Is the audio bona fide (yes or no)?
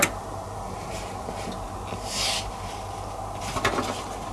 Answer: yes